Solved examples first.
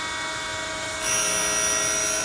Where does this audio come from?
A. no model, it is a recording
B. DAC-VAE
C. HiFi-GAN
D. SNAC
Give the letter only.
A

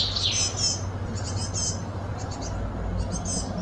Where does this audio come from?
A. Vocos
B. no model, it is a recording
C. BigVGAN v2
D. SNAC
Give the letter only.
B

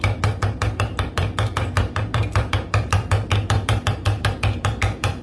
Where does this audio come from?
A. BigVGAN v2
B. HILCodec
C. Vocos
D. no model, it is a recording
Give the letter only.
A